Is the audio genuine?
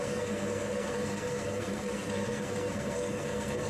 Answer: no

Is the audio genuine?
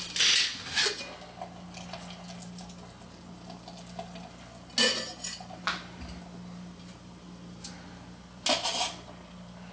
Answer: yes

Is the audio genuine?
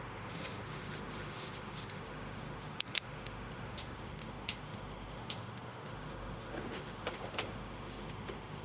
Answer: no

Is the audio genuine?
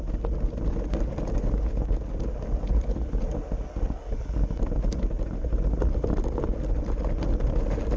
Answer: yes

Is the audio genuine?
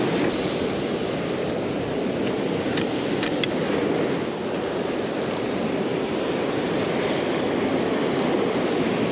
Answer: yes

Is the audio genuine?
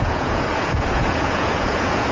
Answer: no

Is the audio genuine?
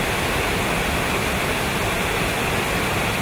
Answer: yes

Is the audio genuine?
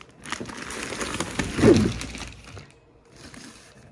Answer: yes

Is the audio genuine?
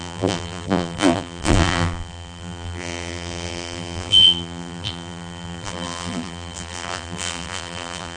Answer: no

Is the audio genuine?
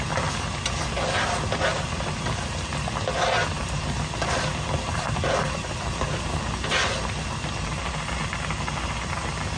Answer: yes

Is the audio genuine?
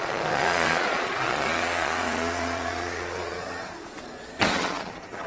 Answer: no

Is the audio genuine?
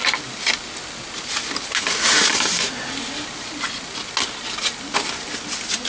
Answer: yes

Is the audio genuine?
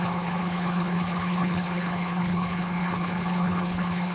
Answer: no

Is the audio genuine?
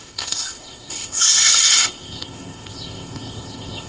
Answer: no